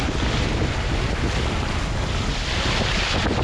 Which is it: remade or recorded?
recorded